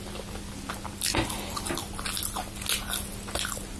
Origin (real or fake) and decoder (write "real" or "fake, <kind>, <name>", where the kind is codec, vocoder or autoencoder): real